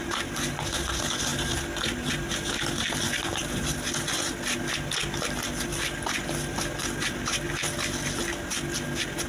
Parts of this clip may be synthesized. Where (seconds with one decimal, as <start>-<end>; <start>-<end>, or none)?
5.7-7.3